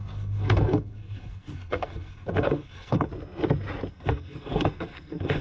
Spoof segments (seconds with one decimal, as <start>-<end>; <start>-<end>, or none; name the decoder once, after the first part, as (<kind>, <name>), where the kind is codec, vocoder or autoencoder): 0.0-3.1 (codec, SNAC); 3.9-5.4